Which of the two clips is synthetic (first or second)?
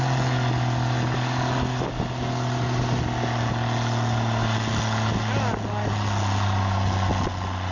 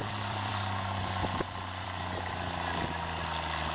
second